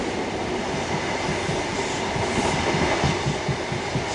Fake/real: real